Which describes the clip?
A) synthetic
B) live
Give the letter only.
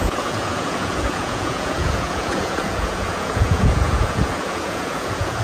A